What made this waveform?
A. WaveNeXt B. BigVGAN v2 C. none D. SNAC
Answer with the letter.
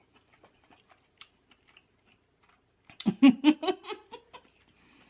C